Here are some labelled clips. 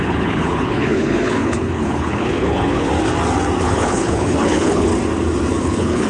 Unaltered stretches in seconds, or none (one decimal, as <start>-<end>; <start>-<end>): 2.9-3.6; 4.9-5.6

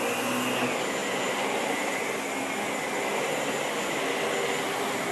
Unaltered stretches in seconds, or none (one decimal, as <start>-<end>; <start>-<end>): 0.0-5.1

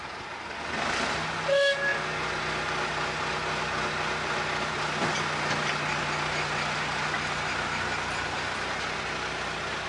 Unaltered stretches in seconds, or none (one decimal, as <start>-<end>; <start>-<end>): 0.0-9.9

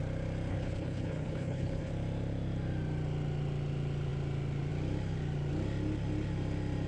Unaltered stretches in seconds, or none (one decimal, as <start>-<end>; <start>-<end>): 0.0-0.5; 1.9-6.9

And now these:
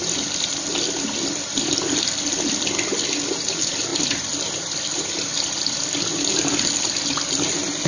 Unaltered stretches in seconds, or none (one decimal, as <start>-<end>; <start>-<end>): 0.0-7.9

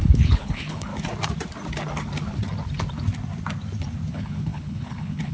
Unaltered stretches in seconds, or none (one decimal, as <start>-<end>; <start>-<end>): 0.9-4.1